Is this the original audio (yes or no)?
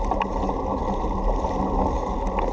yes